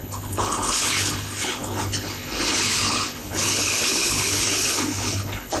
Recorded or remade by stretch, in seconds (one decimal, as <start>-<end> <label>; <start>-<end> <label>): 0.0-5.6 remade

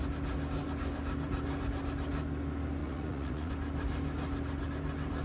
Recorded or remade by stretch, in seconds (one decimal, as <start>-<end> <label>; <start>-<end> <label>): 0.0-2.8 recorded; 2.8-3.5 remade; 3.5-5.2 recorded